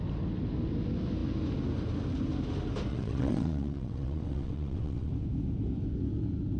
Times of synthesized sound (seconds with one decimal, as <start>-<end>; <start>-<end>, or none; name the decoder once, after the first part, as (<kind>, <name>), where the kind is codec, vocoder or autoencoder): 2.9-5.1 (vocoder, WaveNeXt)